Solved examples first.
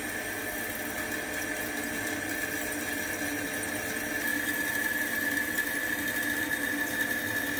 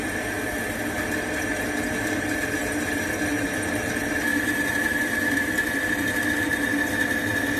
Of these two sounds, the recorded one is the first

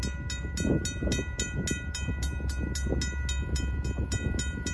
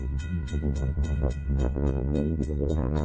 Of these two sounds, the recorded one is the first